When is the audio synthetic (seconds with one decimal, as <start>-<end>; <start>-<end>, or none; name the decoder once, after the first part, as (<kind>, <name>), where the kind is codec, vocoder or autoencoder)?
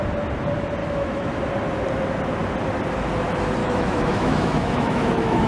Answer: 0.8-1.5 (autoencoder, DAC-VAE); 3.6-5.5